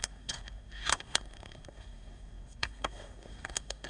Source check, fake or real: fake